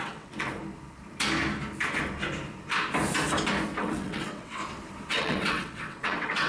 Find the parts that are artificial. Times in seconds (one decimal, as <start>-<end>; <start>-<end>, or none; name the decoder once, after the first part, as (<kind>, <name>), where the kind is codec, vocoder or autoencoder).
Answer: 0.0-0.6 (vocoder, WaveNeXt); 3.8-4.6; 5.1-6.5